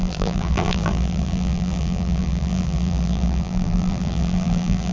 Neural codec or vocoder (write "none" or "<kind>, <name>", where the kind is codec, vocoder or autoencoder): vocoder, BigVGAN v2